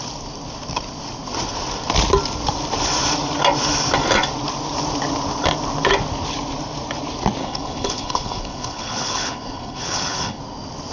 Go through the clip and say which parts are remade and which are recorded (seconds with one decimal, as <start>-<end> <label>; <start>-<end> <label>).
0.0-7.4 recorded; 7.4-10.4 remade; 10.4-10.9 recorded